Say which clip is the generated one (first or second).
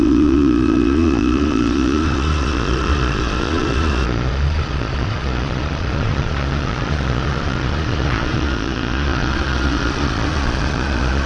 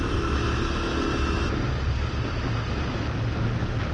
first